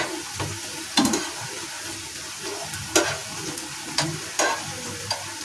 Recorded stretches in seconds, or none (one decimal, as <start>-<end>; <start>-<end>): 0.0-5.4